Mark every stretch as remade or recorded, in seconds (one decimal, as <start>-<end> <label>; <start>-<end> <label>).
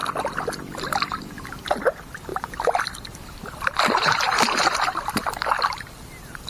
0.0-1.5 remade; 1.5-2.3 recorded; 2.3-5.1 remade; 5.1-6.5 recorded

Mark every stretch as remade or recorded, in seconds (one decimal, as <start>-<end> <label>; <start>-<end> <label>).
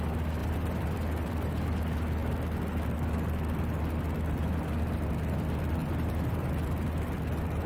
0.0-0.4 recorded; 0.4-1.5 remade; 1.5-5.8 recorded; 5.8-6.5 remade; 6.5-7.7 recorded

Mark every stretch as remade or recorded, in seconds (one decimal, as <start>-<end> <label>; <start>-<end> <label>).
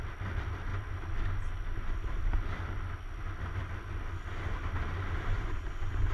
0.0-0.7 remade; 0.7-4.4 recorded; 4.4-6.1 remade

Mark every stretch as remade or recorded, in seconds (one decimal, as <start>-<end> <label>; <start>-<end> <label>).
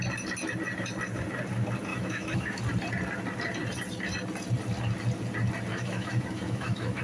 0.0-1.9 recorded; 1.9-2.6 remade; 2.6-5.7 recorded; 5.7-7.0 remade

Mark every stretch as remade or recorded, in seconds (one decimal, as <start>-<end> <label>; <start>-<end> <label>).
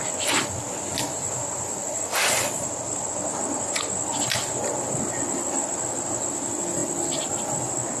0.0-1.8 recorded; 1.8-2.5 remade; 2.5-8.0 recorded